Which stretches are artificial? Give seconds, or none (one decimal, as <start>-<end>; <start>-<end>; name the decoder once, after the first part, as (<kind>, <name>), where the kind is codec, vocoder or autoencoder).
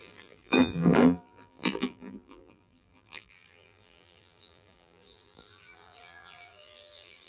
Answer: 0.0-7.3 (vocoder, BigVGAN v2)